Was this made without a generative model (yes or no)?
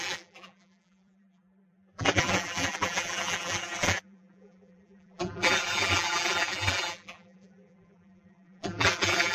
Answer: no